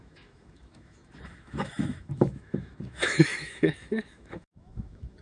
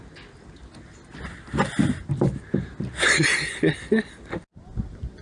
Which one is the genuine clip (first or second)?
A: second